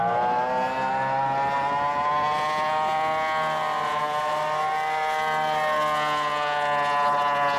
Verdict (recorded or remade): recorded